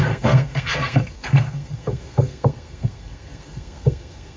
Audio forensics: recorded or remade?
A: remade